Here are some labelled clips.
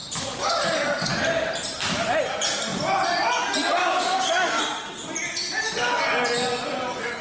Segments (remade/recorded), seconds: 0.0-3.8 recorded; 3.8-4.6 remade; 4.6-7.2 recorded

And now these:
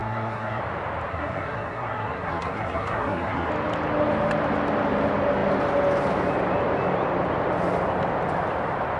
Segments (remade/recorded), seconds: 0.0-0.6 remade; 0.6-1.1 recorded; 1.1-3.5 remade; 3.5-9.0 recorded

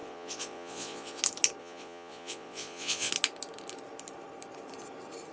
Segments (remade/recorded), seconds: 0.0-1.2 remade; 1.2-1.6 recorded; 1.6-3.1 remade; 3.1-5.3 recorded

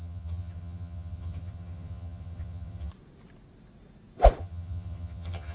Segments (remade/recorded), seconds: 0.0-2.9 remade; 2.9-4.4 recorded; 4.4-5.5 remade